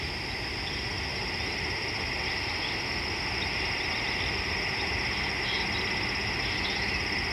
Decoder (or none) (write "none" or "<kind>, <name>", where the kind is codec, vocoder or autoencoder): vocoder, BigVGAN v2